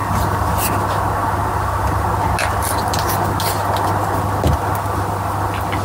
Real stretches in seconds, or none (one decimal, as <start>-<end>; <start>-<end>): 0.0-5.8